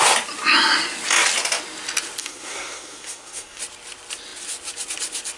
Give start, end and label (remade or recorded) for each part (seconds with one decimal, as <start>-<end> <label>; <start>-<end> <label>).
0.0-2.2 recorded; 2.2-3.6 remade; 3.6-5.4 recorded

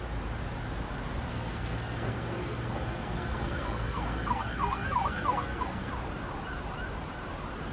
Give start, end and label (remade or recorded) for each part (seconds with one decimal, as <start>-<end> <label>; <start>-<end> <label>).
0.0-1.3 recorded; 1.3-5.9 remade; 5.9-7.7 recorded